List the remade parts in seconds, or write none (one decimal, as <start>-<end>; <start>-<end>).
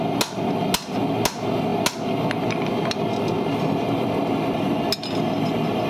none